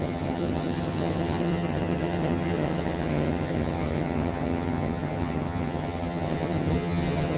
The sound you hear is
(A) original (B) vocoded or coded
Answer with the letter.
B